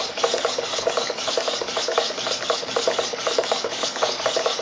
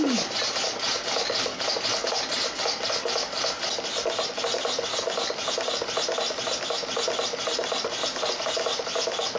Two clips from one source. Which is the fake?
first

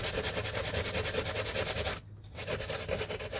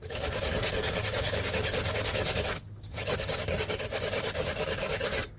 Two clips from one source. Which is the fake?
second